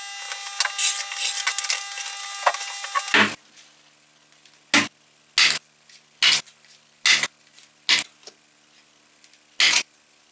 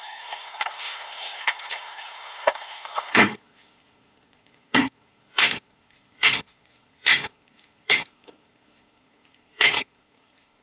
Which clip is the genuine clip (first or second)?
first